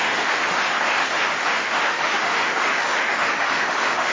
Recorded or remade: remade